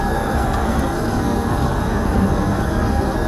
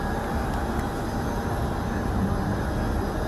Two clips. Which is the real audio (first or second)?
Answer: second